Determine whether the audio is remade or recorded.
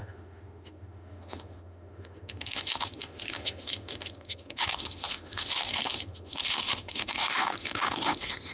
remade